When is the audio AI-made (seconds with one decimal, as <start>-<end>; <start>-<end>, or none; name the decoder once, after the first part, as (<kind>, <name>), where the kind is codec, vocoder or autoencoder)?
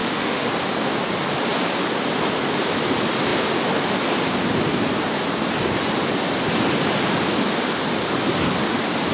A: 0.0-0.5 (autoencoder, DAC-VAE)